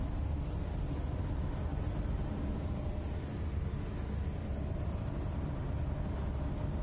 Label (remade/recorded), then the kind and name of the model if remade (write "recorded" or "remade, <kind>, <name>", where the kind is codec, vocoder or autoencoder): recorded